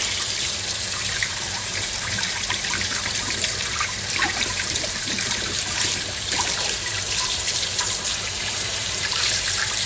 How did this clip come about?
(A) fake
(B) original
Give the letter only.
A